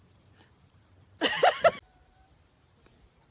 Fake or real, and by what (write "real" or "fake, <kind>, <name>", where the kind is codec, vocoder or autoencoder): real